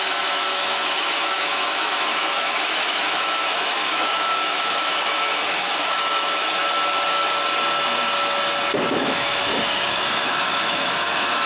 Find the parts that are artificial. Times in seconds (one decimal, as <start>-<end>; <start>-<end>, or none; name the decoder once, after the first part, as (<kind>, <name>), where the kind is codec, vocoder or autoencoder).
0.0-6.6 (autoencoder, DAC-VAE); 8.9-11.5